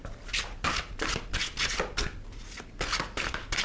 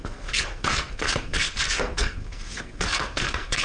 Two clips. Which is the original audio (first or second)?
first